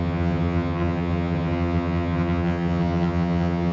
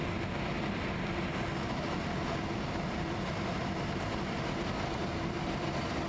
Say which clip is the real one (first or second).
second